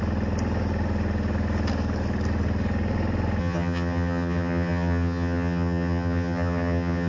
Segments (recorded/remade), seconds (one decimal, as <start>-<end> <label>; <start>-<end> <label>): 0.0-3.4 recorded; 3.4-7.1 remade